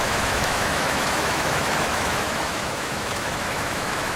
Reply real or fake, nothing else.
fake